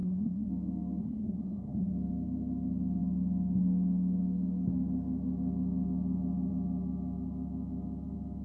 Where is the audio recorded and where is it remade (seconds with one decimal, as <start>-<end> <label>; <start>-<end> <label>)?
0.0-0.5 remade; 0.5-1.0 recorded; 1.0-1.9 remade; 1.9-8.4 recorded